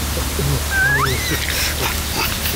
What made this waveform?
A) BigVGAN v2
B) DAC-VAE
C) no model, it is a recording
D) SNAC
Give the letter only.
C